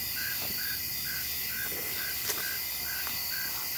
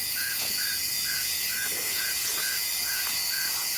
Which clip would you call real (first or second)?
first